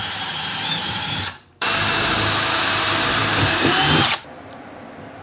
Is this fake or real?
fake